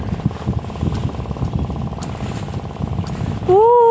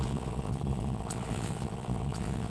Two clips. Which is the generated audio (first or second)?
second